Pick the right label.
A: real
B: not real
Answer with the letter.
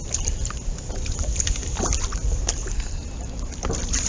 A